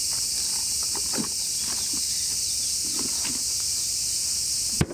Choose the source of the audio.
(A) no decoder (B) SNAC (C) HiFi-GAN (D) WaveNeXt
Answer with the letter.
A